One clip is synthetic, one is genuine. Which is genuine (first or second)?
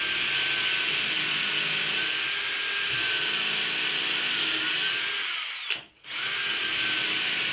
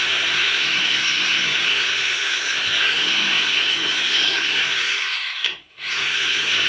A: first